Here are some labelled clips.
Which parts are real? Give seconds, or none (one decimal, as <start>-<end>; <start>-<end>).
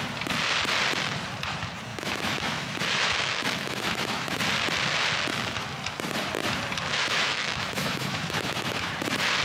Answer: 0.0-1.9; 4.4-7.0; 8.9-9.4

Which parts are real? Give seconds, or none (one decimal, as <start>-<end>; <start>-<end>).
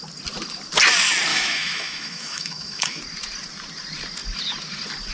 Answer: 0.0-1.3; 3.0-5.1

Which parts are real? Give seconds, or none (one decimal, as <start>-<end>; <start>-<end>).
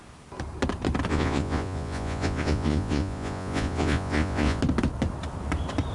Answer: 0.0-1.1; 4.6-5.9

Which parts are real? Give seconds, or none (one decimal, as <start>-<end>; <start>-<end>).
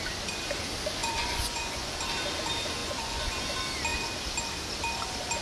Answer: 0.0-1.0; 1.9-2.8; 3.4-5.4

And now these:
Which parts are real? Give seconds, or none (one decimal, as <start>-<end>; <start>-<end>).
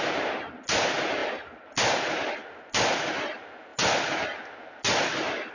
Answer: 0.0-5.5